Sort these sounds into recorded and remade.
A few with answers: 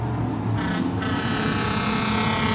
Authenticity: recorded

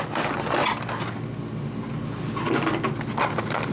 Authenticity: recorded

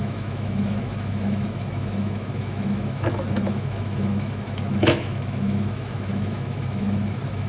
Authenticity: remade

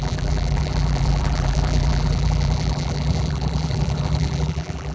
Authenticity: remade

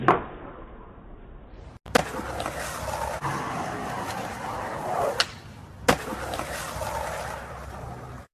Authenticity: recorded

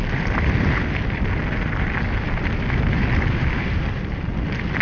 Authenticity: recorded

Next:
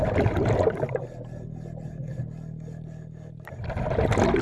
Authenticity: recorded